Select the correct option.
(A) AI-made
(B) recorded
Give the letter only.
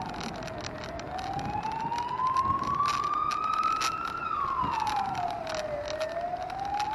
B